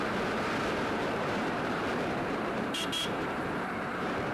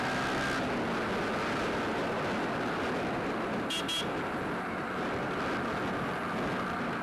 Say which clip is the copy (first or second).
first